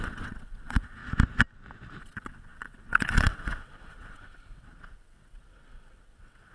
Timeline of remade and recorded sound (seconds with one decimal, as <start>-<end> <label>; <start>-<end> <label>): 0.0-1.0 remade; 1.0-2.0 recorded; 2.0-6.5 remade